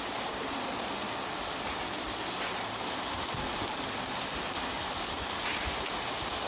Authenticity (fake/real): real